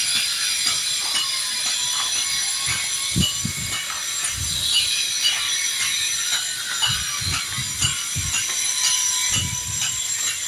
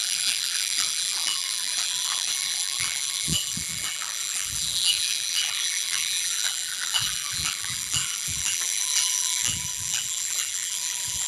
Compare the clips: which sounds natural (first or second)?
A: first